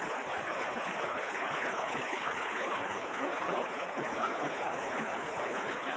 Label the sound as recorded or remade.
remade